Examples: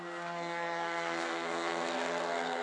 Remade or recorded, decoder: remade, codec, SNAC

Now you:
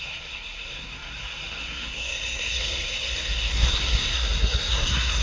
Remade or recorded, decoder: remade, codec, SNAC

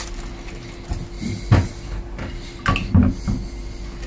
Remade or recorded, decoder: recorded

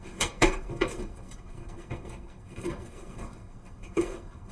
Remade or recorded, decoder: remade, codec, SNAC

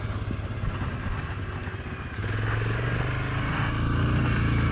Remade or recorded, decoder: recorded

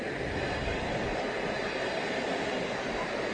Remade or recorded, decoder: recorded